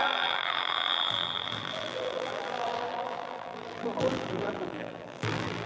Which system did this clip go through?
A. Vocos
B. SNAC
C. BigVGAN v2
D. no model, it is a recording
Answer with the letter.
C